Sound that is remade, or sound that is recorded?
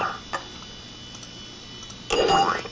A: recorded